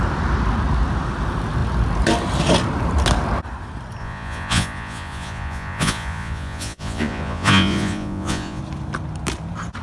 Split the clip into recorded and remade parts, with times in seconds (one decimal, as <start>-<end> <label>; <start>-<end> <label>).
0.0-4.0 recorded; 4.0-8.6 remade; 8.6-9.8 recorded